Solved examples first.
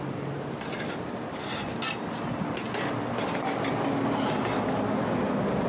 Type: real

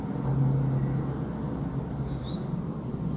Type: real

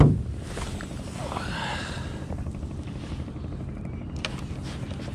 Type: real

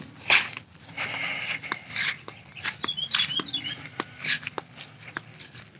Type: real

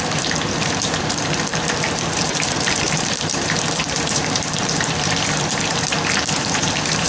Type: fake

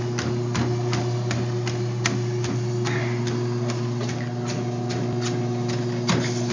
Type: real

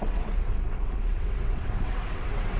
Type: fake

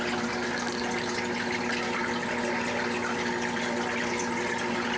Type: real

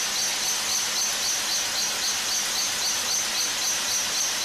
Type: real